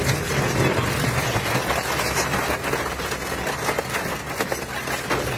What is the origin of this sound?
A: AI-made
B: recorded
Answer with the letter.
B